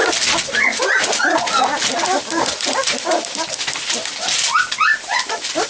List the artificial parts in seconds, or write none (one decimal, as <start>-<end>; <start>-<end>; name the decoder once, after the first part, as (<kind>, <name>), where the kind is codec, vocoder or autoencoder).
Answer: none